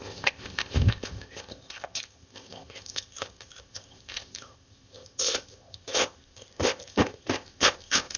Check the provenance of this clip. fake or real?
fake